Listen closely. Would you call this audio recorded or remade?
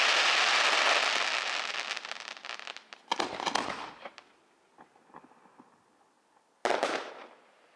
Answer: recorded